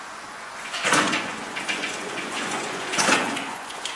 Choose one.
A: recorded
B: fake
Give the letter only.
B